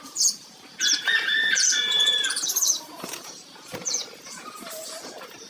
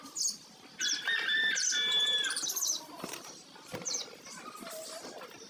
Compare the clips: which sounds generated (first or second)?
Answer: first